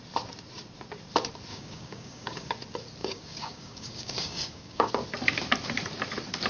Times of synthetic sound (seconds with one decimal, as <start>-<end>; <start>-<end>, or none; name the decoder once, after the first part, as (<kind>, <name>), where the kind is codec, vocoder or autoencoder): 1.5-2.5 (codec, DAC); 3.0-4.9